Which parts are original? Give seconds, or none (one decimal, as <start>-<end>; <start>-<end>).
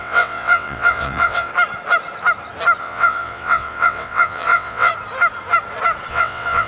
1.5-2.8; 4.9-6.1